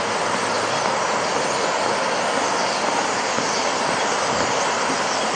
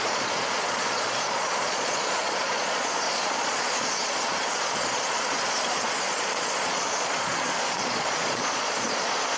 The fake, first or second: second